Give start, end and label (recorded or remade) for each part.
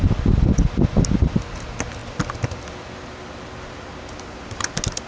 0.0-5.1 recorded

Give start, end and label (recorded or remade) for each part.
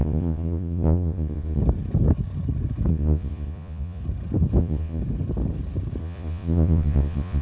0.0-1.6 remade; 1.6-2.9 recorded; 2.9-4.0 remade; 4.0-4.6 recorded; 4.6-5.0 remade; 5.0-6.0 recorded; 6.0-7.4 remade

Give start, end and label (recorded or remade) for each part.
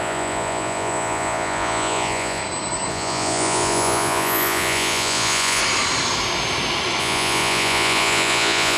0.0-2.4 remade; 2.4-2.9 recorded; 2.9-5.6 remade; 5.6-7.0 recorded; 7.0-8.8 remade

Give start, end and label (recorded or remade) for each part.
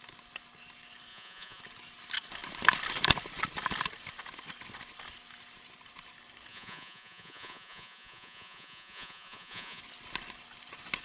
0.0-1.1 recorded; 1.1-1.6 remade; 1.6-6.5 recorded; 6.5-9.8 remade; 9.8-11.0 recorded